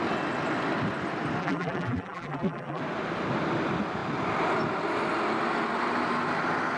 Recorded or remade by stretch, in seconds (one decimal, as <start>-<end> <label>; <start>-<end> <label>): 0.0-1.4 recorded; 1.4-2.8 remade; 2.8-6.8 recorded